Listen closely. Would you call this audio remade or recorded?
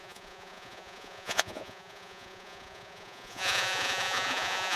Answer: remade